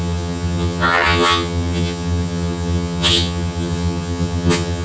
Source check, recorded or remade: remade